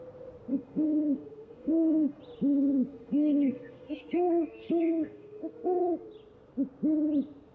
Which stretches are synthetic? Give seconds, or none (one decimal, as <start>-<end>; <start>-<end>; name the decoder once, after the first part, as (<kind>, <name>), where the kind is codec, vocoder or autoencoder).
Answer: 0.5-2.2 (codec, SNAC); 2.9-5.8